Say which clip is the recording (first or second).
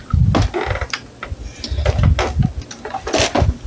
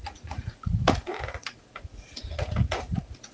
first